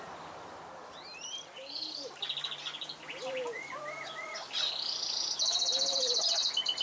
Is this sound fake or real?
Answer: real